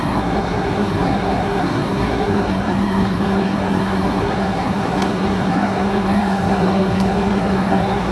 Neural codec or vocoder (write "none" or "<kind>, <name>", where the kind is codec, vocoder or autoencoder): codec, SNAC